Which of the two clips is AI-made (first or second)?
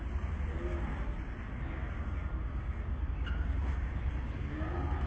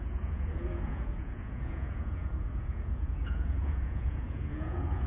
second